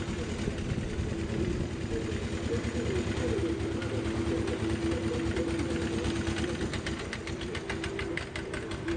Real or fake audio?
real